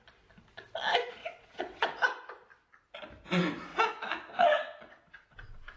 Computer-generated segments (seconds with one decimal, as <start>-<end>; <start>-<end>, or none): 1.2-2.0; 3.7-5.8